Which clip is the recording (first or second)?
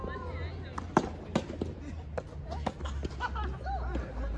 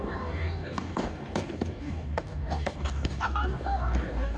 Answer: first